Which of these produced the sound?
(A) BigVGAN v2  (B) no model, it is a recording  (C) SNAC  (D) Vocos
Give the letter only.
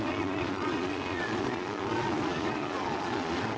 D